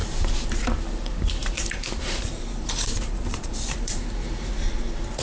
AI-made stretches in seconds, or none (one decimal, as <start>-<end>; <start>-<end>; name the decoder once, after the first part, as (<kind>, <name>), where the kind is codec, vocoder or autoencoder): 1.4-4.5 (vocoder, BigVGAN v2)